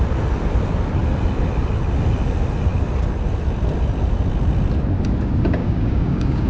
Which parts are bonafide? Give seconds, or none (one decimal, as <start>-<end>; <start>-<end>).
0.0-5.6

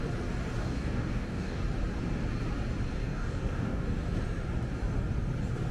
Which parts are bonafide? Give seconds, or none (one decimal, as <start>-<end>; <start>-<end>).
0.0-0.6; 1.6-3.0; 3.8-5.7

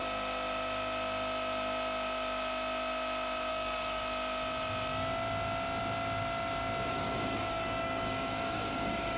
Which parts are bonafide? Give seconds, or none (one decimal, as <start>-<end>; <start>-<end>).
0.0-3.5; 4.0-6.9

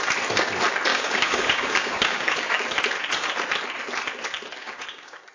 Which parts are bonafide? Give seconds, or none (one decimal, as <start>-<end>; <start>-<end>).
0.0-0.9; 2.6-4.6